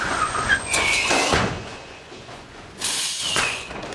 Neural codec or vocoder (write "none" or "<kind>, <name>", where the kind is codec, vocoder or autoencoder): vocoder, Vocos